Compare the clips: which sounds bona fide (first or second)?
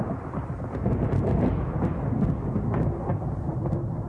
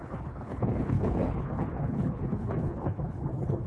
first